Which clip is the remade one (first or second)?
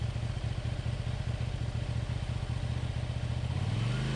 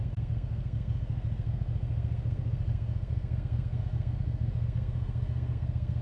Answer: second